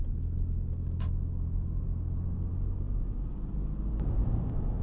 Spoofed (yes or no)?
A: no